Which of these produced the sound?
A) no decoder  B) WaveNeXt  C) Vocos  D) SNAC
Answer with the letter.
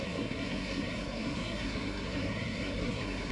D